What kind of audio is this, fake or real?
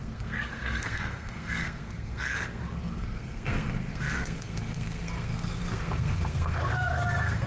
fake